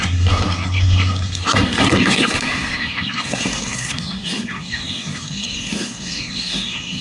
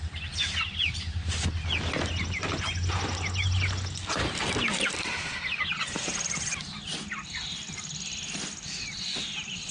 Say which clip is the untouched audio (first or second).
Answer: second